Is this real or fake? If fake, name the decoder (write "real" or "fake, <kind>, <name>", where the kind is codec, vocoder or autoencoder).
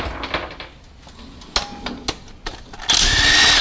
real